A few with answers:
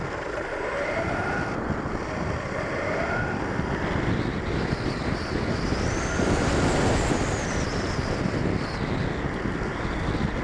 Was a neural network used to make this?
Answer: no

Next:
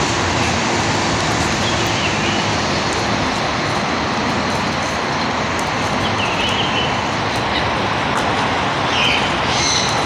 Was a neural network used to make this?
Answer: no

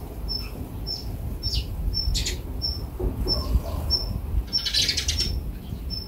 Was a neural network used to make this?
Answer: no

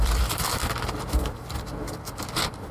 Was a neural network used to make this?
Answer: yes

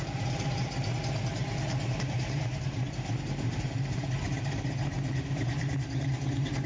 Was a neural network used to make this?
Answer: yes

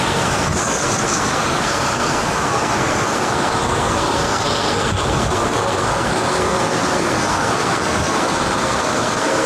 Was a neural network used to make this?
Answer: yes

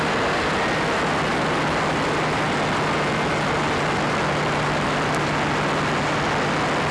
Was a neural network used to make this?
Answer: no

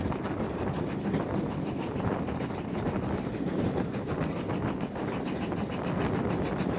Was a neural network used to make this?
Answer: no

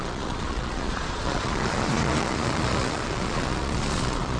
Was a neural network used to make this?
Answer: yes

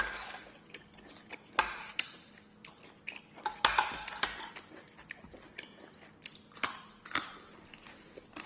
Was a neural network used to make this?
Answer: no